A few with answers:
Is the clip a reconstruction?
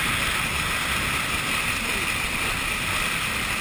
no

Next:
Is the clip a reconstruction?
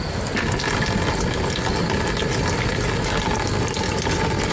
no